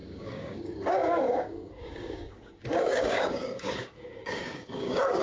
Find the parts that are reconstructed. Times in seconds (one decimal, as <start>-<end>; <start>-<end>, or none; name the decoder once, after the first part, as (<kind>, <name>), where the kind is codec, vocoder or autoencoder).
0.0-5.2 (codec, DAC)